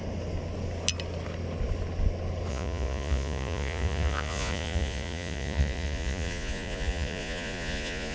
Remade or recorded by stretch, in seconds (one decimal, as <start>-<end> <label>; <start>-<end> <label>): 0.0-2.5 recorded; 2.5-8.1 remade